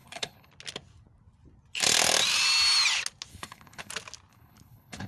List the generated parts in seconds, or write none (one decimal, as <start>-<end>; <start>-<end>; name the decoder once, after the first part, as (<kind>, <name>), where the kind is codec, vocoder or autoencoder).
0.0-0.5 (codec, HILCodec); 3.3-3.9; 4.3-5.1